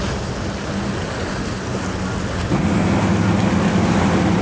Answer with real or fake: real